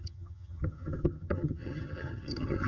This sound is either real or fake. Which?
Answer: fake